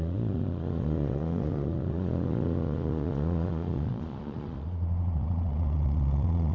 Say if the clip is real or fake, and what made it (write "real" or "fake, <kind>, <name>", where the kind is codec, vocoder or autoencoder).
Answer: fake, vocoder, Vocos